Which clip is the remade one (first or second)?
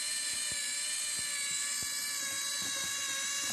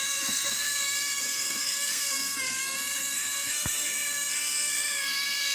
second